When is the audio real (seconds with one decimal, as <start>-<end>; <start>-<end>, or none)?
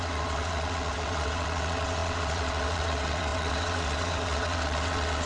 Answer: none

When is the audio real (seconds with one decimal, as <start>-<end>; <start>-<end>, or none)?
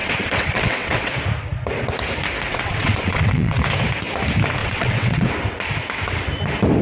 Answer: 1.1-2.5; 3.6-4.6; 5.3-6.8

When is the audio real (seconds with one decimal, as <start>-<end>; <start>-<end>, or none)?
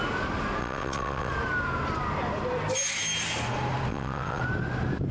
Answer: 0.0-0.6; 1.3-3.9; 4.4-5.1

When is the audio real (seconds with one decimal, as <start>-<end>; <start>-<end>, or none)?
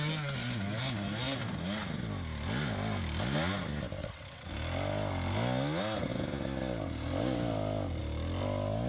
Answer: 0.0-4.0; 4.5-8.9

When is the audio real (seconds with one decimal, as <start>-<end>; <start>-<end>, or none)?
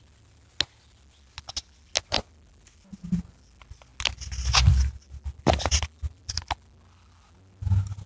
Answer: 0.0-8.1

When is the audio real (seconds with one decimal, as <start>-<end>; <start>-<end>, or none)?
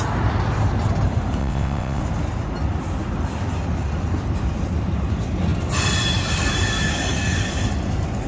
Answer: 0.0-1.4; 2.0-8.3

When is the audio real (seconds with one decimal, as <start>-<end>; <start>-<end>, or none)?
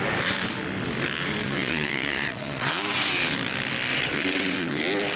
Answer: 0.0-1.4; 2.8-3.9; 4.8-5.2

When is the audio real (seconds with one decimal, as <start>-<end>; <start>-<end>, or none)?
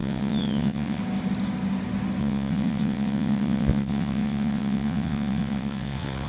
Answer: 1.0-2.2